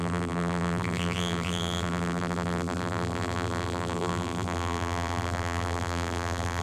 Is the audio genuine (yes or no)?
no